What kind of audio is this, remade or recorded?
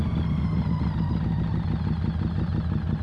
recorded